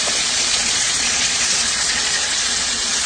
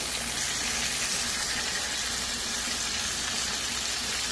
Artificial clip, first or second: first